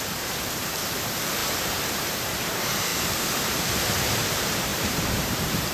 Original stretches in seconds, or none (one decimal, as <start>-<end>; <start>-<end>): none